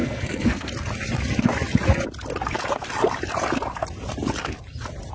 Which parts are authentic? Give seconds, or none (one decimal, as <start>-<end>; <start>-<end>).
0.7-5.1